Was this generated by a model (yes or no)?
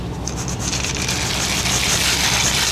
no